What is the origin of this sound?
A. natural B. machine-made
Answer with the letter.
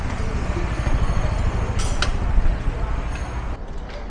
A